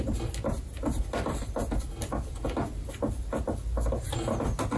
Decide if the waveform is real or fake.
real